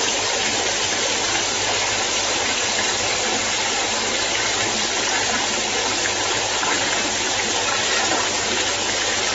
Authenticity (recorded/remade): remade